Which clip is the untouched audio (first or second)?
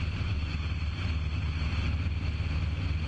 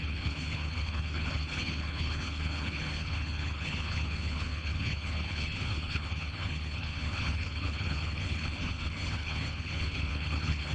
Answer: first